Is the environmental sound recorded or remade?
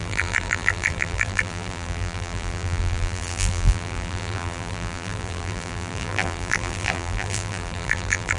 remade